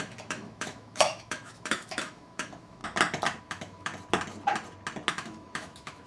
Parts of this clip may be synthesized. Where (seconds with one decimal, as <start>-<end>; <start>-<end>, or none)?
0.0-2.8; 3.4-3.9; 5.1-6.1